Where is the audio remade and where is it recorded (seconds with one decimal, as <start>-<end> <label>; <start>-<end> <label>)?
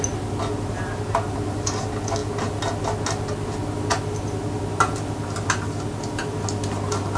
0.0-7.2 recorded